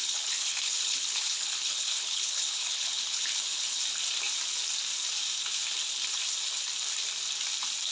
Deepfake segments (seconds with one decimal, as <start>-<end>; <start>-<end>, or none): 0.0-3.8